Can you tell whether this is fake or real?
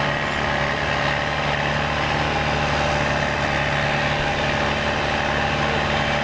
real